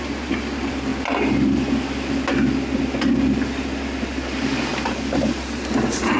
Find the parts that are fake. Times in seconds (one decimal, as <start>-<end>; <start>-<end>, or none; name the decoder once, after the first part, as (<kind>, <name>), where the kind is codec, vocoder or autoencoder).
none